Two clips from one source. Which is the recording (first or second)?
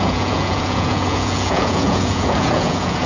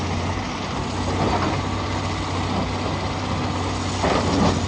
second